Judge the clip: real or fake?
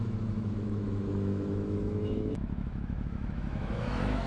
fake